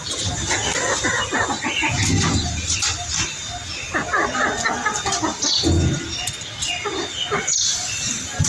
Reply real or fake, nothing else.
real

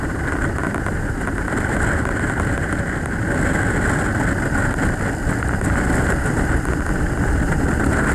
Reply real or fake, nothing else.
real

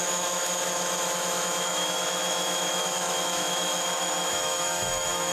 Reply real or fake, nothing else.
fake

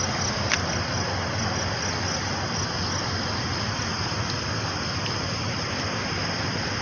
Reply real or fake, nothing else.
real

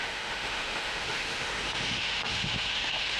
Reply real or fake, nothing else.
fake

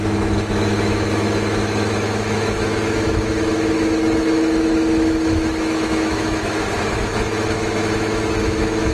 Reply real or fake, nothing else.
fake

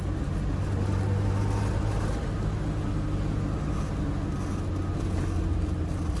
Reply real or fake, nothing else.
real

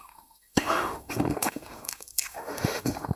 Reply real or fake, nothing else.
fake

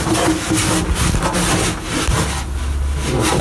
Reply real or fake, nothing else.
real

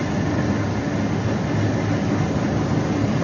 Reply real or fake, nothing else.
real